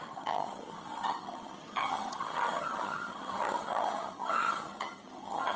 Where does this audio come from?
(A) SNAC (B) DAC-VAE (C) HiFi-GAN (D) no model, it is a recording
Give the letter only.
C